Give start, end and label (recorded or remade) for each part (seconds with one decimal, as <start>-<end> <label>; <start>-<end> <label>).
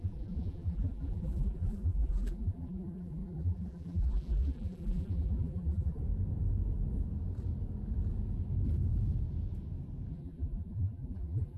0.0-6.0 remade; 6.0-10.1 recorded; 10.1-11.6 remade